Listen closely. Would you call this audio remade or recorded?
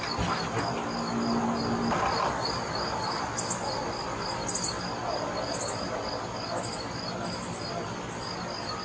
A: recorded